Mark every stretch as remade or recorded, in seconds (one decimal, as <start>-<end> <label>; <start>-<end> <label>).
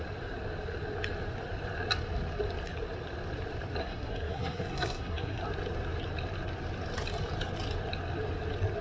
0.0-3.8 recorded; 3.8-5.4 remade; 5.4-8.8 recorded